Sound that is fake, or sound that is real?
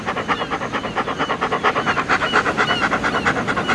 real